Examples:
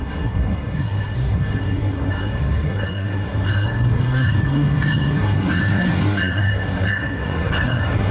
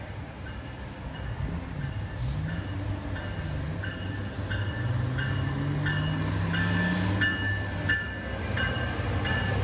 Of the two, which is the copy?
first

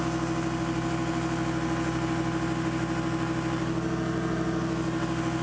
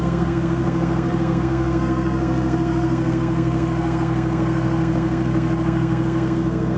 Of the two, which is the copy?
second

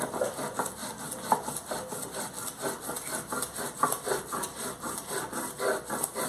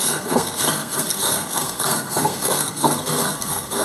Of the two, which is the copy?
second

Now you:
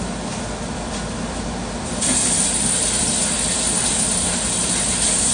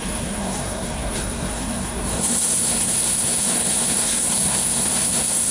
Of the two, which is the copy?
second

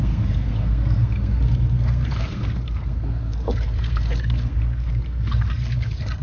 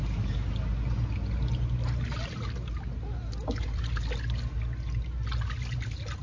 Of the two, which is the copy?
first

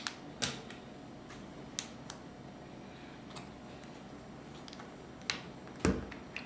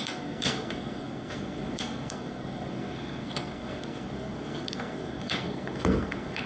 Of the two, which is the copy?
second